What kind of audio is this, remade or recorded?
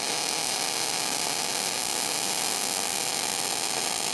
recorded